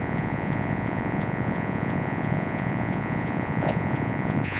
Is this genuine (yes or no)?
no